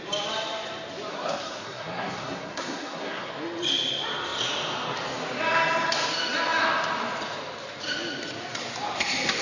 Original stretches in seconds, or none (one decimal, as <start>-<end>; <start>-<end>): 0.0-1.1; 3.3-9.4